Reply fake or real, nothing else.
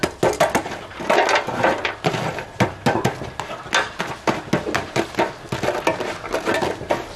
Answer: real